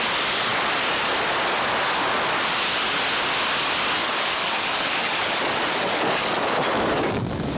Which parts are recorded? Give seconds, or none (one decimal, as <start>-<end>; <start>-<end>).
0.0-4.0

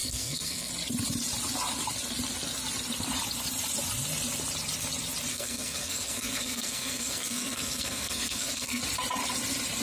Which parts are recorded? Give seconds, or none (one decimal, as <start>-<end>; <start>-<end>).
0.7-5.3; 8.8-9.8

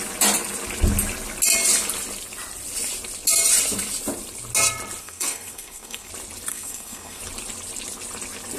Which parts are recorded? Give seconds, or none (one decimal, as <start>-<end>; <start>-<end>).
0.0-5.0; 6.1-6.5; 7.2-8.6

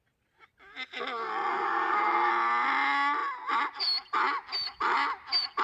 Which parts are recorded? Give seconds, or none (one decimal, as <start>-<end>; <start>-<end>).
0.0-1.5; 2.3-5.6

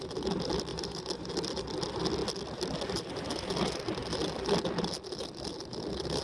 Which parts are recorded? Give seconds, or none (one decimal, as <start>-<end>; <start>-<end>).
0.0-0.7; 1.3-6.2

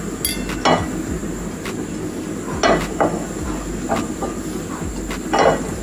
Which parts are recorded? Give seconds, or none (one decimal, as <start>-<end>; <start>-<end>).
0.0-5.8

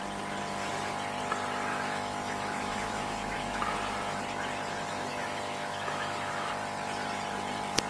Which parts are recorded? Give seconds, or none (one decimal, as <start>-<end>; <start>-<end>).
0.0-1.7; 3.6-5.1; 6.5-7.9

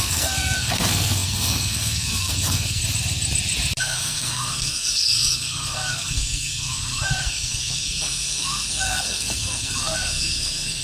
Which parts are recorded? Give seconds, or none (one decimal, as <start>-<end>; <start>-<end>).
2.8-3.8